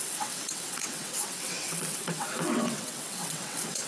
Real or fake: fake